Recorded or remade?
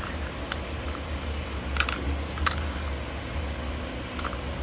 recorded